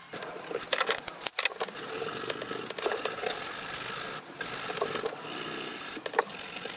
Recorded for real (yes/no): yes